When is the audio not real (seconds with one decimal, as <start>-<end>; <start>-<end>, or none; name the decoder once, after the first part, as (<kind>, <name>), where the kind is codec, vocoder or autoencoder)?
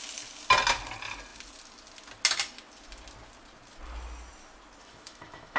4.8-5.6 (autoencoder, DAC-VAE)